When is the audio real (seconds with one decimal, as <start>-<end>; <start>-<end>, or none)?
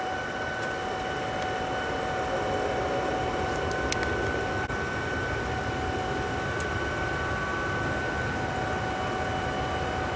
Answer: 0.0-10.2